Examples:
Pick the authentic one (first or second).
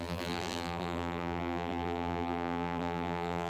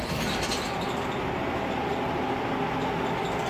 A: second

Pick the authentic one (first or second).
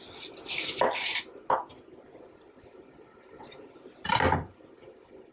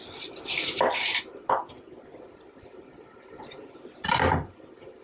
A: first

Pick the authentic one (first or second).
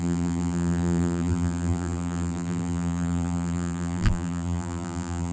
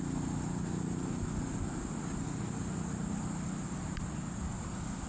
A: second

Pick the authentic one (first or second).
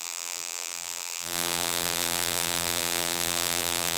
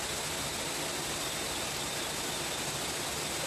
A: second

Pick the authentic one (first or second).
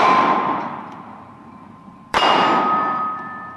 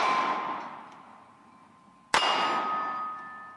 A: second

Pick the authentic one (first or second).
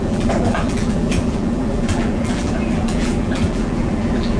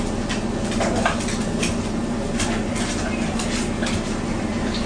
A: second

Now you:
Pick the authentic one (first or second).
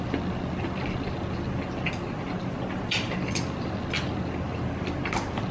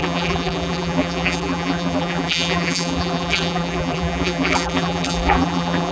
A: first